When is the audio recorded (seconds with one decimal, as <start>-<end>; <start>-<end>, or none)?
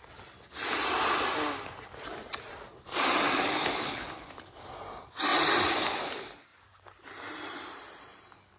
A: 0.0-3.6; 4.7-8.6